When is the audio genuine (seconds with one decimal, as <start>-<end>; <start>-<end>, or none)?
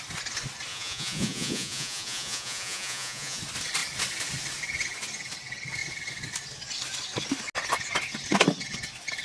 0.0-0.7; 3.4-9.2